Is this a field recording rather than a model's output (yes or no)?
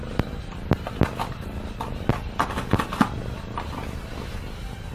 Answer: yes